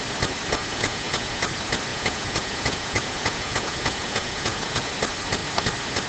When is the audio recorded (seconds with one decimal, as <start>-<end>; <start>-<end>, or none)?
0.0-0.7; 1.3-1.9; 4.9-6.1